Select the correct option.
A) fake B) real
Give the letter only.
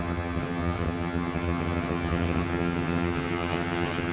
A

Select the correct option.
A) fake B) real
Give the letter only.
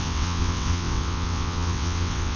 A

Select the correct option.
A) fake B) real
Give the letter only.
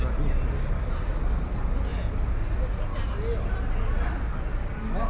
B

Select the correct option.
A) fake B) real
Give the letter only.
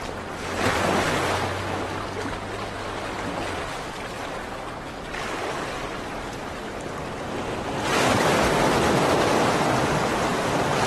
B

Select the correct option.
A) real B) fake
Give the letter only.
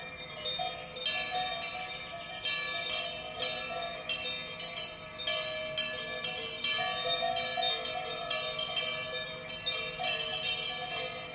A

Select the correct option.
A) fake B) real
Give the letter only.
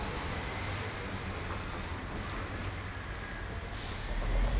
B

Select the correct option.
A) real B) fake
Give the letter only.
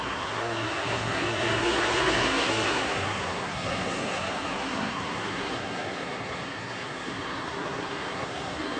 B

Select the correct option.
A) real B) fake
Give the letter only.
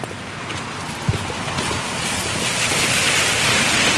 A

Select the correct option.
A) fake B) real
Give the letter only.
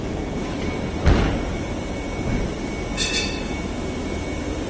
B